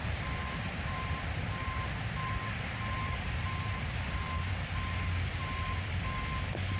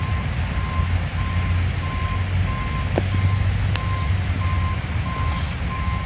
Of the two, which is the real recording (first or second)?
second